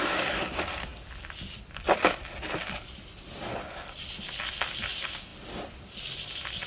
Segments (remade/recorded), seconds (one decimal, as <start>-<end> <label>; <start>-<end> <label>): 0.0-6.7 recorded